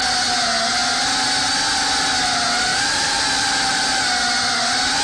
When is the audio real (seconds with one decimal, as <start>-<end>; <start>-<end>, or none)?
0.0-2.7; 4.0-5.0